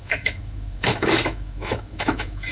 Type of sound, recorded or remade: remade